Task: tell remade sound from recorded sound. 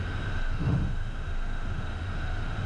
remade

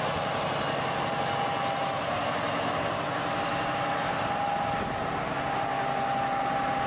recorded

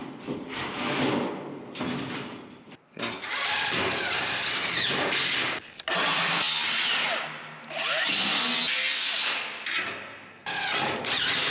recorded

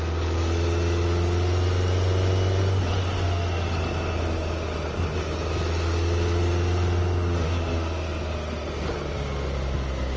recorded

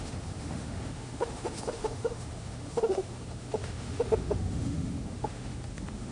remade